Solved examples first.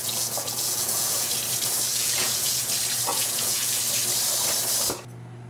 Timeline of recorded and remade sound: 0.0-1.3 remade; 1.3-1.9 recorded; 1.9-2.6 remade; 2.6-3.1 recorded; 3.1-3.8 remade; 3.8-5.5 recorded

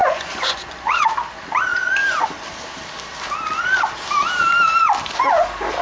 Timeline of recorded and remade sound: 0.0-1.0 remade; 1.0-5.8 recorded

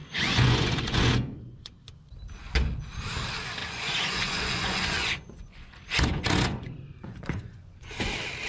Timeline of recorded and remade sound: 0.0-1.8 remade; 1.8-3.6 recorded; 3.6-8.1 remade; 8.1-8.5 recorded

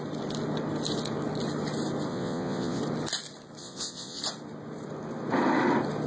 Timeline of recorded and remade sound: 0.0-2.1 recorded; 2.1-2.8 remade; 2.8-3.6 recorded; 3.6-4.2 remade; 4.2-6.1 recorded